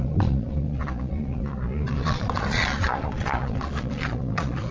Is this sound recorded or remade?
remade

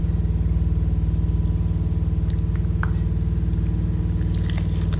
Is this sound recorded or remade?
recorded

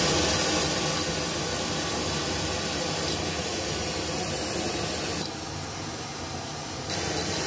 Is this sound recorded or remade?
recorded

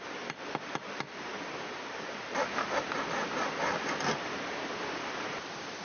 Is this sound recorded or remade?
remade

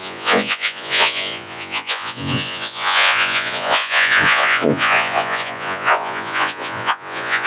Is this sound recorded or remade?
remade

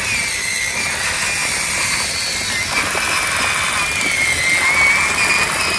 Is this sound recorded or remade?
recorded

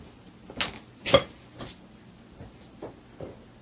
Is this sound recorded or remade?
recorded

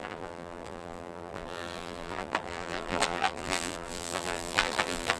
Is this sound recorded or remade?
remade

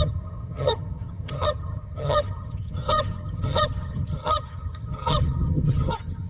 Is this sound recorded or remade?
remade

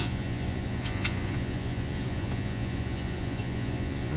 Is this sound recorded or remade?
remade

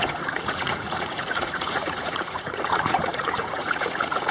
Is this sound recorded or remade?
remade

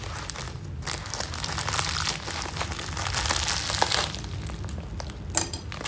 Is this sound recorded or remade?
recorded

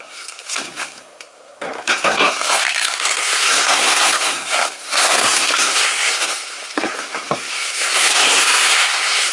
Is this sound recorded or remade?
remade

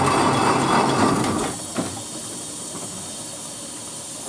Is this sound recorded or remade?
recorded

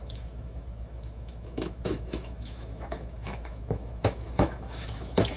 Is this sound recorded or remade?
remade